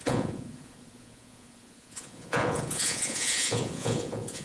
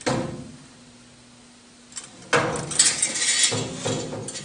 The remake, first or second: first